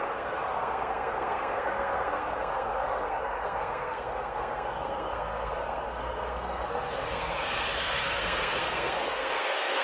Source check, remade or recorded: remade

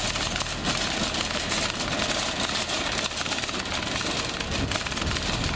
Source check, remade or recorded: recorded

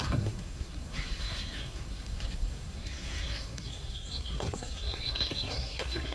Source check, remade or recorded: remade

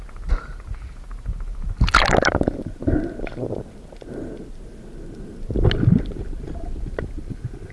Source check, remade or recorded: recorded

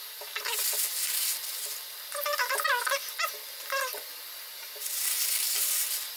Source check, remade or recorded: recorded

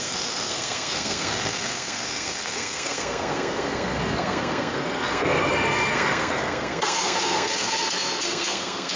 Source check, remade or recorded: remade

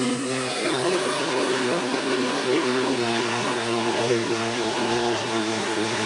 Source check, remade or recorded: remade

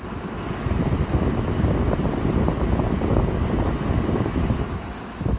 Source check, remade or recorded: recorded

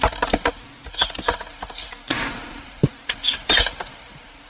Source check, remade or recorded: recorded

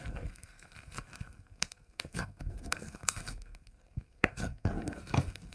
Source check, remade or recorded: remade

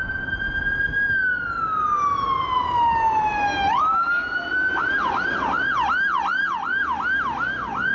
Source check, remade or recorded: recorded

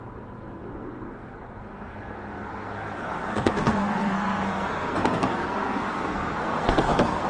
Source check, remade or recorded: remade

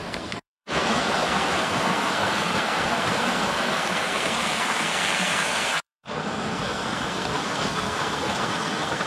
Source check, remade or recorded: remade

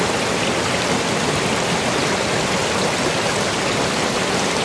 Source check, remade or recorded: recorded